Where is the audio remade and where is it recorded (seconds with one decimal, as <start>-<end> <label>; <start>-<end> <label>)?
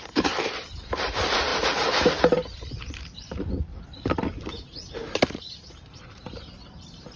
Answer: 0.0-3.7 remade; 3.7-4.9 recorded; 4.9-7.2 remade